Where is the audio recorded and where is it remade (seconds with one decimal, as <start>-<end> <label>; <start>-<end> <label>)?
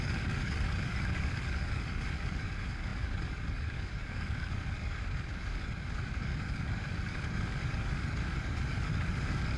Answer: 0.0-9.6 remade